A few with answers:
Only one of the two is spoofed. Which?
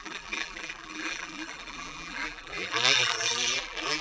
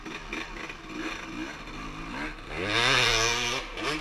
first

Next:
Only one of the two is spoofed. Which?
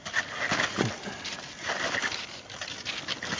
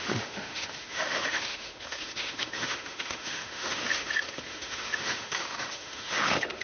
second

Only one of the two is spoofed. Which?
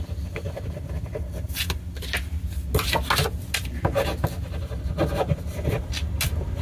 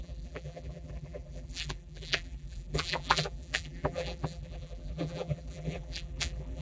second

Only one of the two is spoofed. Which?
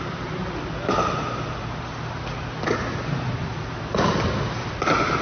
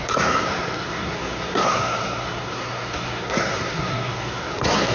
second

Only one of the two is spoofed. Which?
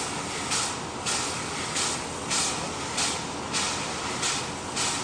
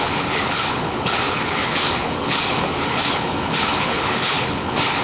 second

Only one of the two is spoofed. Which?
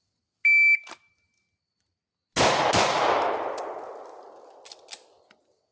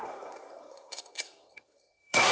second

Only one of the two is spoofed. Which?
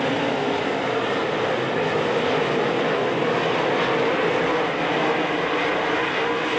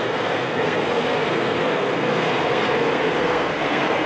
second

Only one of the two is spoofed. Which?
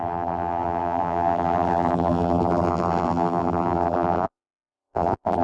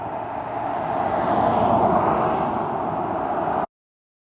first